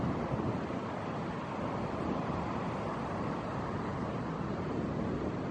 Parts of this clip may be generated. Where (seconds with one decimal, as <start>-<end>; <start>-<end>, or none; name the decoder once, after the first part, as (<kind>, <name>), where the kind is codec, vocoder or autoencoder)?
none